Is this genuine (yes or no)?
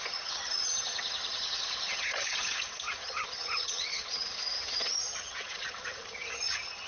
no